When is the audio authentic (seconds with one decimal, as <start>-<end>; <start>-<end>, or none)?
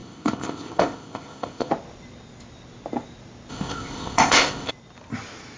1.7-3.5; 4.7-5.6